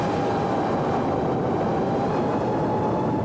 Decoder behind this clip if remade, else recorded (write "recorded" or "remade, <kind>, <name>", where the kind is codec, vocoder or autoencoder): recorded